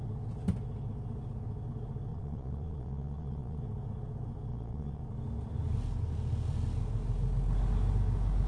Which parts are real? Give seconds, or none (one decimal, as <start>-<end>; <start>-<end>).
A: 0.0-2.1; 3.6-4.5; 5.0-8.5

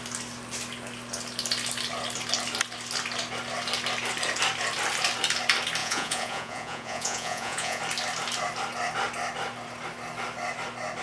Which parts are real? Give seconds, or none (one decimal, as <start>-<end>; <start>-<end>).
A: 0.0-5.8; 7.8-11.0

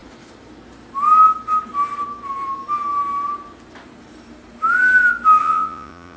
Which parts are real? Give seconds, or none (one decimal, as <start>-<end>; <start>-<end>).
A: 0.0-5.4

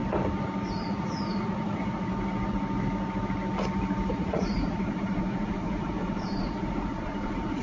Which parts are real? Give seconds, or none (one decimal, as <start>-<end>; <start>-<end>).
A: 0.0-0.7; 2.1-4.1

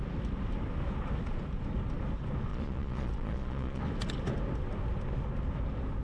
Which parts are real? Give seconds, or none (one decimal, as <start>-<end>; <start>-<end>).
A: 0.0-2.5; 3.8-6.0

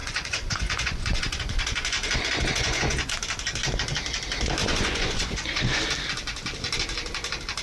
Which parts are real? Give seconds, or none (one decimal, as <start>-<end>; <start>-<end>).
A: 3.1-4.6; 5.8-7.6

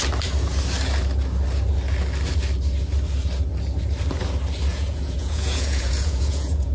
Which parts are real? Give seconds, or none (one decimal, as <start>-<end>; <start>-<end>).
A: 0.0-4.7

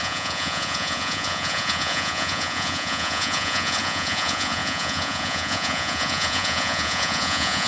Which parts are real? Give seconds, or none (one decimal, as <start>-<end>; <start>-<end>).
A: none